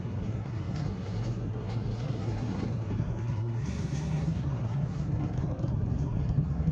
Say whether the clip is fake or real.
fake